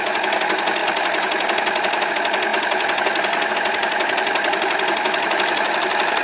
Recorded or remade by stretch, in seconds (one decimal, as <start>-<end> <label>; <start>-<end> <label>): 0.0-6.2 recorded